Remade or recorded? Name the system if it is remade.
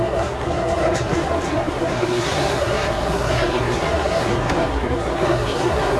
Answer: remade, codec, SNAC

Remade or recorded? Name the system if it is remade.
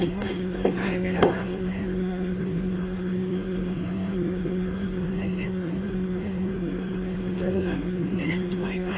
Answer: remade, codec, SNAC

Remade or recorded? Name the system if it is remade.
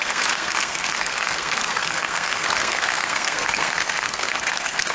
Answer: remade, codec, SNAC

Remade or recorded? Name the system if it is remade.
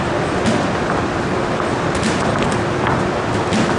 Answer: recorded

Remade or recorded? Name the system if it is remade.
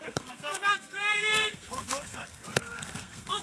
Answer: remade, codec, SNAC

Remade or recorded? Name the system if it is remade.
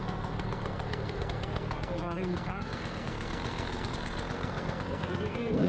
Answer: remade, codec, SNAC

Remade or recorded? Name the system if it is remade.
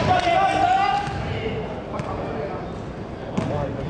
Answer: recorded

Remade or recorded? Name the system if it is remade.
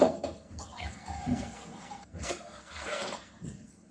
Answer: remade, codec, SNAC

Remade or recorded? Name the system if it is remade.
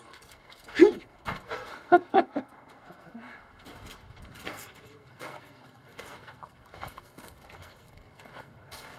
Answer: remade, codec, SNAC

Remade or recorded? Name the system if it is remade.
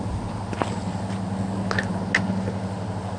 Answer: recorded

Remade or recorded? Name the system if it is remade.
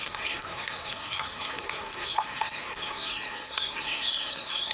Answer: remade, codec, SNAC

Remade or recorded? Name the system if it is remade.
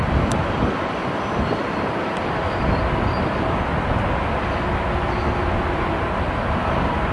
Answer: recorded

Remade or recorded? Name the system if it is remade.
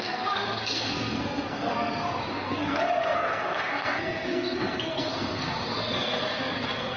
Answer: remade, codec, SNAC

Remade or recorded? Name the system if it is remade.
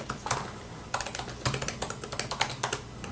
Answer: recorded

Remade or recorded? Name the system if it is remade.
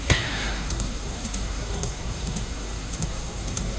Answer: remade, codec, SNAC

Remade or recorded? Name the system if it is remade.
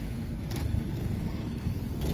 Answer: remade, codec, SNAC